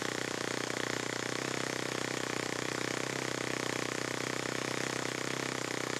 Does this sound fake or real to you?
fake